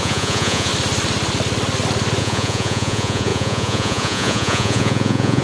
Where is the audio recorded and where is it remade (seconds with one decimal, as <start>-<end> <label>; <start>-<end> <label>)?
0.0-0.7 remade; 0.7-2.2 recorded; 2.2-5.4 remade